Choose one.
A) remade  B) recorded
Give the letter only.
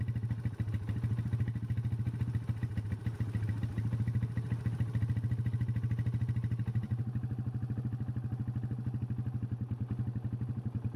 B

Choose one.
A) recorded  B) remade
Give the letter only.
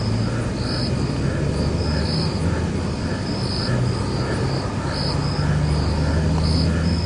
A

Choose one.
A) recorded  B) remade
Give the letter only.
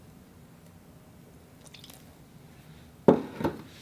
A